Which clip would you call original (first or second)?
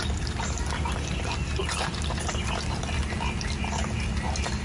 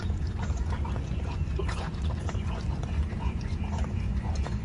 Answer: first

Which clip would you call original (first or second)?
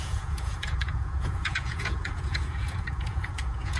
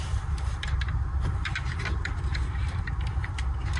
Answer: second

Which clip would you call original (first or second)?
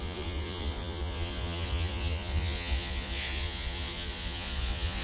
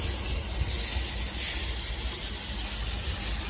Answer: second